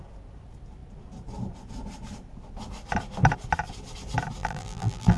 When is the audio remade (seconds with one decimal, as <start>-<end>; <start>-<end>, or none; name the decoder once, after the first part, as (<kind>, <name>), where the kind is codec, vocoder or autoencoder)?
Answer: 4.4-5.2 (vocoder, BigVGAN v2)